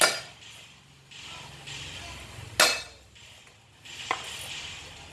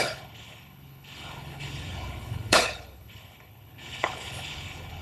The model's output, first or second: second